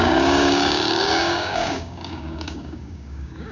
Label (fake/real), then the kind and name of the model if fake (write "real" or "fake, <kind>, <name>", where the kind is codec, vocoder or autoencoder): fake, codec, DAC